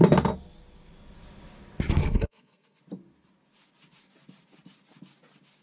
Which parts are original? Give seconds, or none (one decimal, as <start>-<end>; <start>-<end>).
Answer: 0.0-2.0; 2.8-5.6